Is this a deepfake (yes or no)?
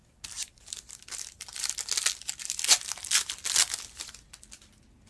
no